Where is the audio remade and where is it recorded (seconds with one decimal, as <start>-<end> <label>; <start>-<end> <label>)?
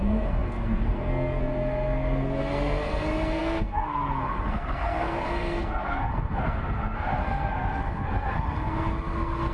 0.0-9.5 remade